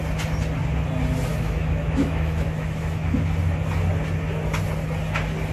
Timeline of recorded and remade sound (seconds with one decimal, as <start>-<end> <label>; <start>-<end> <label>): 0.0-1.3 recorded; 1.3-3.2 remade; 3.2-5.5 recorded